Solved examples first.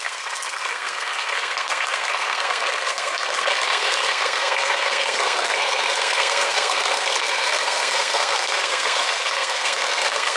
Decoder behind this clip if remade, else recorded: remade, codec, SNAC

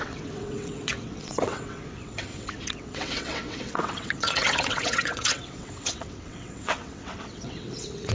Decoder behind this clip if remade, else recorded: remade, vocoder, WaveNeXt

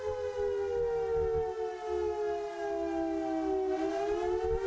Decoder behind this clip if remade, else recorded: recorded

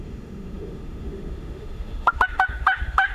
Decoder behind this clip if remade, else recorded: remade, autoencoder, DAC-VAE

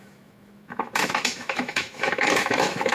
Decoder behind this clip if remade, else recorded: remade, autoencoder, DAC-VAE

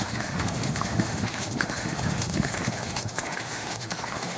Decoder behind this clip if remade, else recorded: remade, autoencoder, DAC-VAE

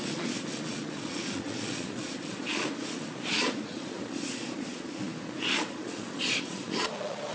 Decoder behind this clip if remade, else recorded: remade, vocoder, Vocos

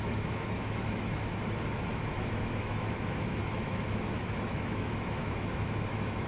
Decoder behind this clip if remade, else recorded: remade, autoencoder, DAC-VAE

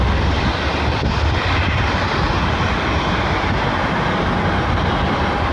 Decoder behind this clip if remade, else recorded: recorded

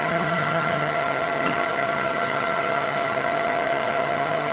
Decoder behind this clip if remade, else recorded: remade, vocoder, HiFi-GAN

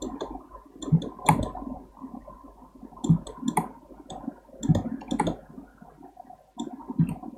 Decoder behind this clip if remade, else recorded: recorded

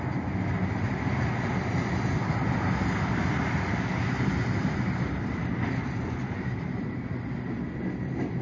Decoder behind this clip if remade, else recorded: recorded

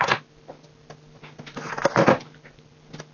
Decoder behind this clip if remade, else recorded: recorded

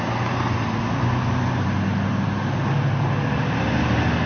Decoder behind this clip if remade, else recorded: recorded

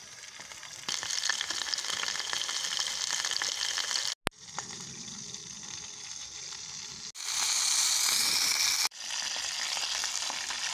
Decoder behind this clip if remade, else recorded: recorded